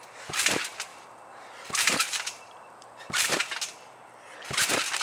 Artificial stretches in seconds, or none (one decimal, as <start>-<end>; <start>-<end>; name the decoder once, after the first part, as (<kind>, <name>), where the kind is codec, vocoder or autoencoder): 0.9-3.4 (vocoder, BigVGAN v2)

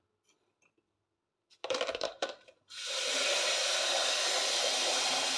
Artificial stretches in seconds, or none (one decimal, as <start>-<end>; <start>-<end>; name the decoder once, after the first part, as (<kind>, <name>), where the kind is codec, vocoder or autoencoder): 1.6-2.6 (vocoder, BigVGAN v2)